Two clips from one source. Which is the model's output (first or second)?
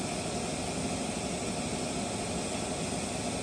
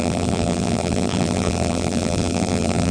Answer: second